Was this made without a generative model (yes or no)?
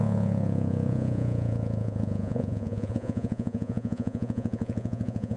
no